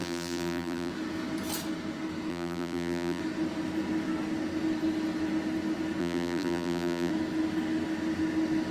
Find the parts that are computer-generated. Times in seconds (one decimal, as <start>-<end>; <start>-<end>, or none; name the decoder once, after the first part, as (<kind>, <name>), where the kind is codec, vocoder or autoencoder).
0.0-0.9 (vocoder, BigVGAN v2); 2.3-3.2; 6.0-7.1